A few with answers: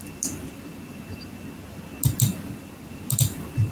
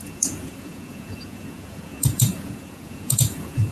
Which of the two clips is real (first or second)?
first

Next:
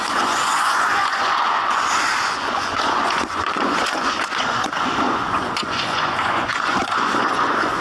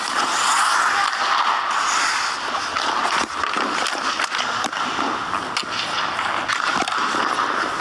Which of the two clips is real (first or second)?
second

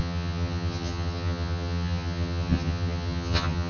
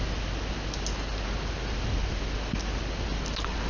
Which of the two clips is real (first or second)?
second